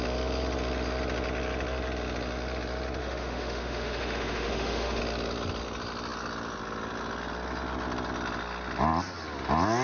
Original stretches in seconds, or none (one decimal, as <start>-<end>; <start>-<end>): 0.0-3.0; 5.0-9.8

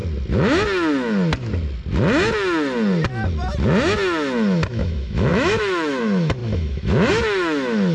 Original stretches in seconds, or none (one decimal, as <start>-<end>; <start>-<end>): 0.0-4.7

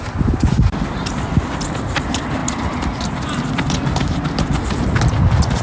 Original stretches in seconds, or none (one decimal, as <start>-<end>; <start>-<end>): 0.0-5.6

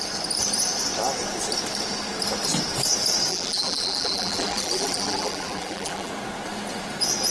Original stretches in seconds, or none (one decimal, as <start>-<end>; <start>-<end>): 0.0-3.3; 6.1-7.3

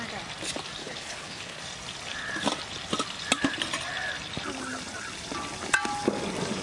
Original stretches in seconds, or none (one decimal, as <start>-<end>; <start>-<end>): 0.0-0.8; 1.6-6.6

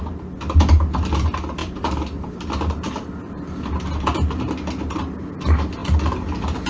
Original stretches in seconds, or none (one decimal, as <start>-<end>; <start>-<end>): 0.0-6.7